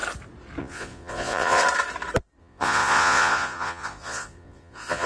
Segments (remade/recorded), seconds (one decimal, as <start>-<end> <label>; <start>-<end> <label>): 0.0-0.6 recorded; 0.6-1.6 remade; 1.6-2.4 recorded; 2.4-5.1 remade